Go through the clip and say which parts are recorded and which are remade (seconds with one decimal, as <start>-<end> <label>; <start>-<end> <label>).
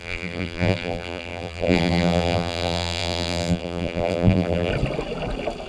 0.0-4.7 remade; 4.7-5.7 recorded